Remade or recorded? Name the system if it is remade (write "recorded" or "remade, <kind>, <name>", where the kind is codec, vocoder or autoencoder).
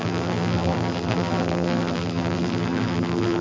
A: remade, vocoder, BigVGAN v2